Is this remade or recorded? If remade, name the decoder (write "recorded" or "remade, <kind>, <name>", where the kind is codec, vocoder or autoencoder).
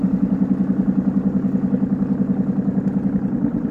recorded